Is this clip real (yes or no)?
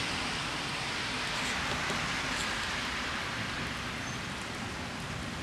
yes